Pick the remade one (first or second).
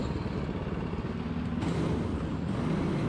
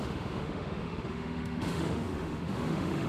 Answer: second